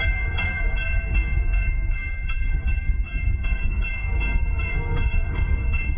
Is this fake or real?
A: fake